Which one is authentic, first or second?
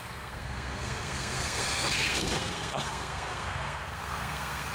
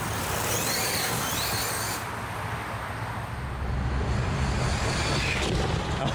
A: second